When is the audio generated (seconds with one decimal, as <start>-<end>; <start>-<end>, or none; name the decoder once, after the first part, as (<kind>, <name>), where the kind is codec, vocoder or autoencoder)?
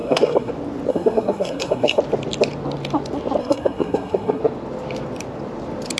0.0-0.5 (codec, SNAC); 0.9-2.0; 3.4-4.4